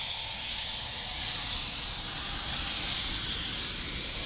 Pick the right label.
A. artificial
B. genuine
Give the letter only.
A